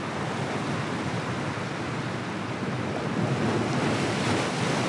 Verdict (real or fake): real